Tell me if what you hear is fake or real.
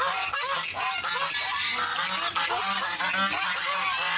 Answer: real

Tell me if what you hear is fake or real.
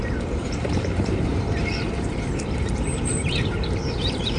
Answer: fake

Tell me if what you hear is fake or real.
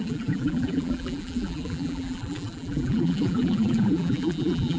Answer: fake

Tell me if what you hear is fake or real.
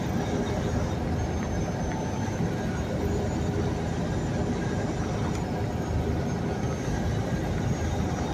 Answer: real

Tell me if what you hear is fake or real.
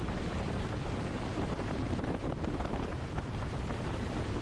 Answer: fake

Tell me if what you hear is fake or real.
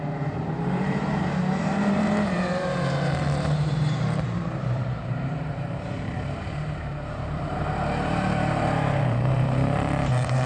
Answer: fake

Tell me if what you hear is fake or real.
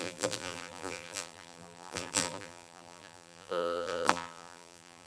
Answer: fake